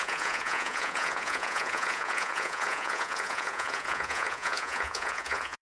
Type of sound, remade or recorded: remade